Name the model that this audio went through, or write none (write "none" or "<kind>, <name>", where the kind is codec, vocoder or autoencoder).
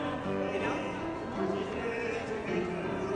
vocoder, Vocos